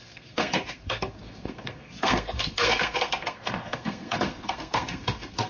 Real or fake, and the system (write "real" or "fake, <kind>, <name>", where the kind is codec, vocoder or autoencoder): fake, codec, SNAC